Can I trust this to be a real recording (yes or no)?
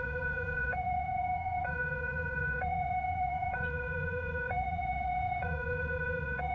no